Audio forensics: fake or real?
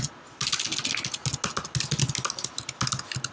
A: real